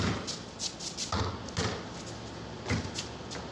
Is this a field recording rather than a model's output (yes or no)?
yes